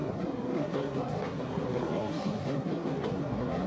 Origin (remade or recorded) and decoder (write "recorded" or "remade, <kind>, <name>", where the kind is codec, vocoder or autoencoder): remade, codec, SNAC